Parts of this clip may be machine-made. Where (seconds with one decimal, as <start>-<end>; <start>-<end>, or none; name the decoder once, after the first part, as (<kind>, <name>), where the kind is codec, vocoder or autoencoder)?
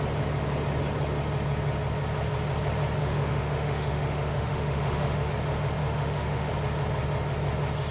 3.0-5.3 (autoencoder, DAC-VAE); 5.8-6.5